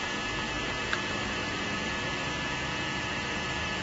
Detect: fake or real fake